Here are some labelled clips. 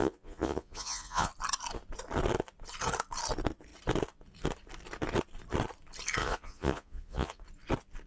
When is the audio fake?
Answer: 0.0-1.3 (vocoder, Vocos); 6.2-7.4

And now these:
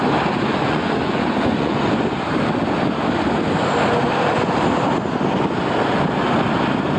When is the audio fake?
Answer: 0.5-1.9 (vocoder, Vocos)